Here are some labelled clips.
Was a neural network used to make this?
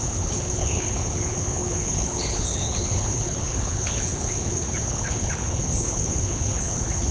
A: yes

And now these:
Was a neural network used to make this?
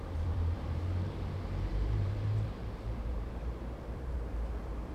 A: yes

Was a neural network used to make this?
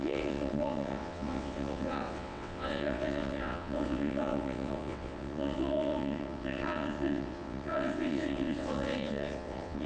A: yes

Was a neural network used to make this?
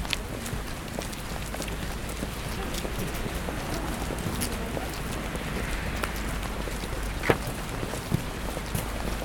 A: no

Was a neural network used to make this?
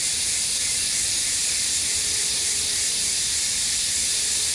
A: yes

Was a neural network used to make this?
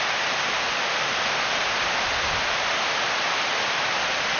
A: no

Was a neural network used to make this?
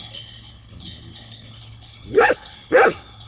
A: yes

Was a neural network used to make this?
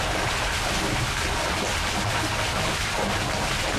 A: no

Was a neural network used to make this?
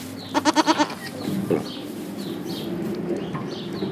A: no